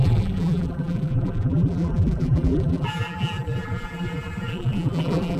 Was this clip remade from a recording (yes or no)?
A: yes